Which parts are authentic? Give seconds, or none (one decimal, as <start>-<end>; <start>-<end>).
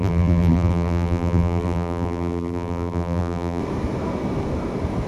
3.6-5.1